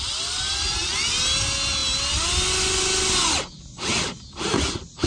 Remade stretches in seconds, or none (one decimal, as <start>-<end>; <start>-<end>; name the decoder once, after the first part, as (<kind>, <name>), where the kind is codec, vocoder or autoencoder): none